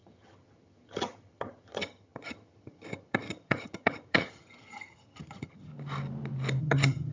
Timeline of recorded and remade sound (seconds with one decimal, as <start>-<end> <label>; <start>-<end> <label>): 0.0-5.7 remade; 5.7-6.6 recorded; 6.6-7.1 remade